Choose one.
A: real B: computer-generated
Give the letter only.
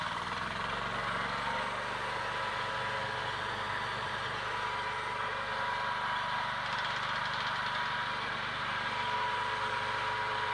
A